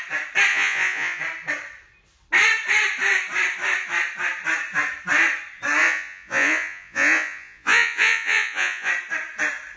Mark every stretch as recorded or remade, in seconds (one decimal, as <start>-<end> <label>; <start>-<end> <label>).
0.0-0.5 recorded; 0.5-1.2 remade; 1.2-5.8 recorded; 5.8-8.9 remade; 8.9-9.8 recorded